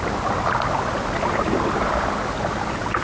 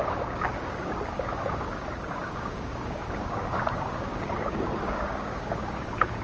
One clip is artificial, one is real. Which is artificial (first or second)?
second